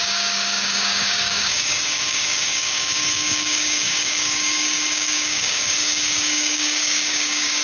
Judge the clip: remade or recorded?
remade